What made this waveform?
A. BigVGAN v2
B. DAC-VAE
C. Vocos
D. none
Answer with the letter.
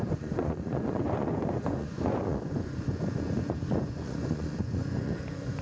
C